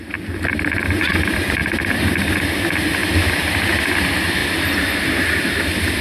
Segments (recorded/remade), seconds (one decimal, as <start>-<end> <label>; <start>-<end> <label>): 0.0-1.6 recorded; 1.6-2.3 remade; 2.3-6.0 recorded